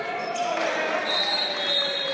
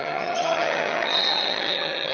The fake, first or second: second